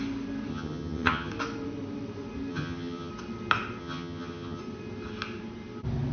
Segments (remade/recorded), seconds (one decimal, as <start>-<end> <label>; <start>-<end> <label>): 0.0-0.5 recorded; 0.5-1.3 remade; 1.3-2.5 recorded; 2.5-3.1 remade; 3.1-3.8 recorded; 3.8-4.6 remade; 4.6-6.1 recorded